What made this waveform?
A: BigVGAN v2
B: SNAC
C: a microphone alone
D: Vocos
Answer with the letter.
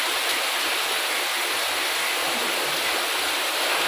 C